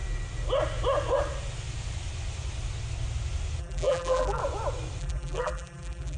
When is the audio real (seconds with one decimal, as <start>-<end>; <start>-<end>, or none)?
0.0-3.6; 4.4-5.0